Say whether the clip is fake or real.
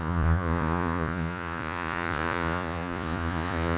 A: fake